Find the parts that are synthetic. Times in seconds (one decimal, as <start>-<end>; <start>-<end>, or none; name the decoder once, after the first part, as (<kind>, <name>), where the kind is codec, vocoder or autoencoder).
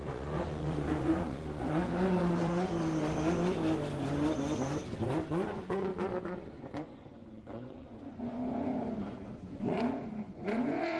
0.0-1.8 (vocoder, Vocos); 2.3-2.7; 5.3-5.9; 6.6-11.0